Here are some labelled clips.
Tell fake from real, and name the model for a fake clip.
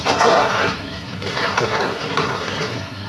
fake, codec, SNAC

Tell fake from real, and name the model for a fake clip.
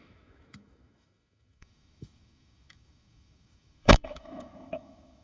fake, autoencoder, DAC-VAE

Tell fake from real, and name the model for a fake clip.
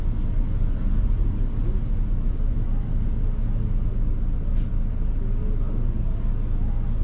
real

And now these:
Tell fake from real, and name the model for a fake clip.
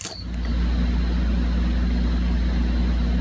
real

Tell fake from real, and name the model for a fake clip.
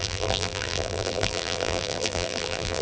fake, vocoder, BigVGAN v2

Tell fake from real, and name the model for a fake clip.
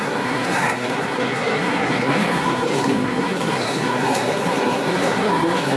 fake, codec, SNAC